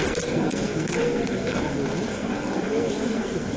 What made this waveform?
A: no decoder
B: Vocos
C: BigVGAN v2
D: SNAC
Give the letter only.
D